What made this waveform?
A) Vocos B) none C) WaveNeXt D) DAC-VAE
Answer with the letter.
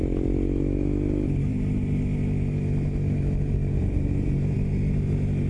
B